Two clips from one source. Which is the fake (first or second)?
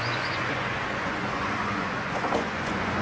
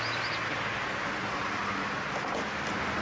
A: first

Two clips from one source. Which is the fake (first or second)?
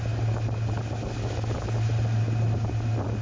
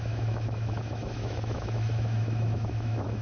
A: second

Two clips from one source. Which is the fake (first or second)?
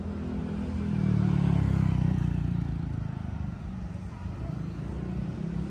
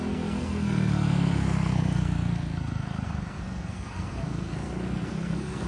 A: second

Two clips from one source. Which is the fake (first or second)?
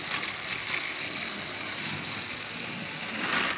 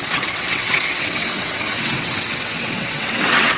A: second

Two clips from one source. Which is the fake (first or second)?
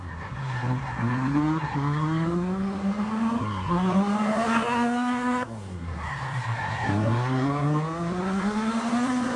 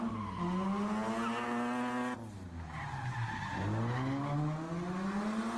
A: first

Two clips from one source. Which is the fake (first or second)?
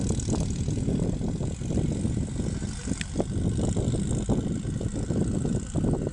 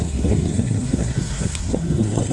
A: second